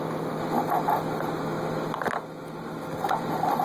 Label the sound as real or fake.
real